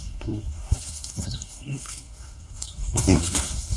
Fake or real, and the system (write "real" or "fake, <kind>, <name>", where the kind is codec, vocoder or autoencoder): fake, codec, SNAC